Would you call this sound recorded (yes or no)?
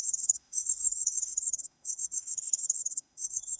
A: no